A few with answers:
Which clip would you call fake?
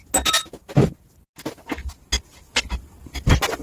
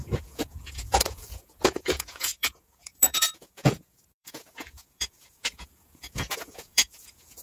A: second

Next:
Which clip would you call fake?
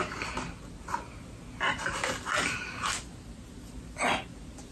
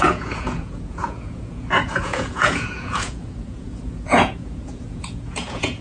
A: second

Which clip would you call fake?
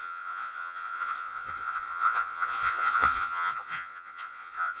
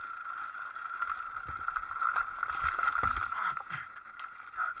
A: first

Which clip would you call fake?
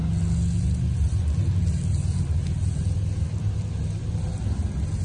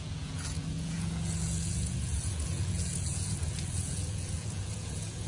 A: second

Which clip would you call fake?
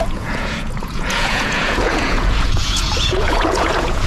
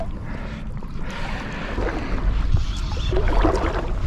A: first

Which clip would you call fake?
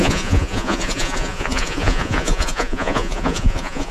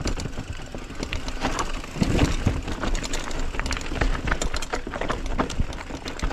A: first